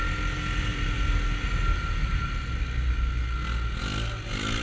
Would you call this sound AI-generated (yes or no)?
no